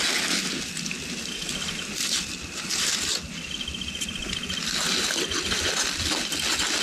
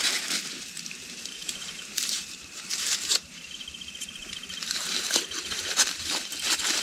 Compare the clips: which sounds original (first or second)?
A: first